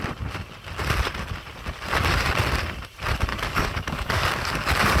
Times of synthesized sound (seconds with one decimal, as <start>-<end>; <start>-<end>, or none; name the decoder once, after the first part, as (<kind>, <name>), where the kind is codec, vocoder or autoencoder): 3.3-5.0 (codec, DAC)